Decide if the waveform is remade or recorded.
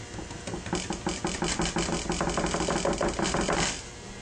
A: recorded